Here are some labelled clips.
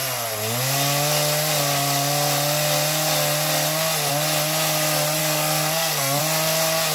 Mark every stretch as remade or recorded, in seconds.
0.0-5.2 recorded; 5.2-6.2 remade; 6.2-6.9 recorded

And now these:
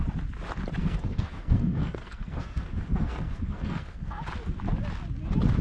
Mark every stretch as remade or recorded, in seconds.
0.0-0.8 recorded; 0.8-4.2 remade; 4.2-5.6 recorded

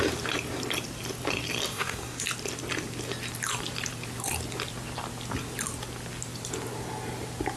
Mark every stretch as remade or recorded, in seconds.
0.0-1.7 recorded; 1.7-2.2 remade; 2.2-7.6 recorded

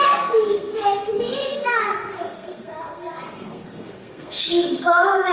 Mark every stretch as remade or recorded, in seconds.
0.0-5.3 remade

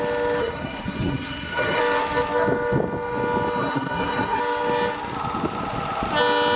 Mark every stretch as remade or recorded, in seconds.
0.0-0.4 recorded; 0.4-1.8 remade; 1.8-3.6 recorded; 3.6-4.4 remade; 4.4-6.6 recorded